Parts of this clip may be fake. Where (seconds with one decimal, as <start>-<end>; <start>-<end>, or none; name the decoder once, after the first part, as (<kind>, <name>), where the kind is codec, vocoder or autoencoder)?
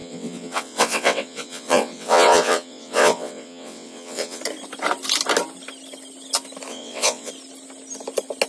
0.0-4.4 (vocoder, WaveNeXt); 6.7-7.3